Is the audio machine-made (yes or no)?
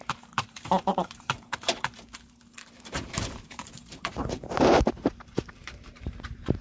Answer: yes